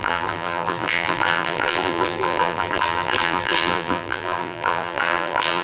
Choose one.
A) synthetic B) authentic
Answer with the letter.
A